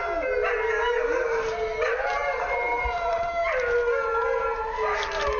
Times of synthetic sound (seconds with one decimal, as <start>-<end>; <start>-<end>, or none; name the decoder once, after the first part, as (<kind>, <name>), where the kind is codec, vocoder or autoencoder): 2.2-3.3 (vocoder, BigVGAN v2)